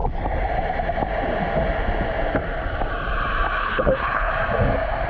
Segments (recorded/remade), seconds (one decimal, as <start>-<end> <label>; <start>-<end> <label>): 0.0-3.6 recorded; 3.6-4.3 remade; 4.3-5.1 recorded